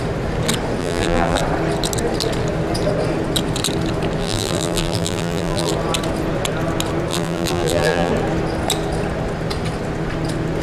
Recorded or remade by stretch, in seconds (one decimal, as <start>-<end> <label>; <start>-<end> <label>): 0.0-0.8 recorded; 0.8-1.4 remade; 1.4-4.2 recorded; 4.2-5.7 remade; 5.7-7.1 recorded; 7.1-8.1 remade; 8.1-10.6 recorded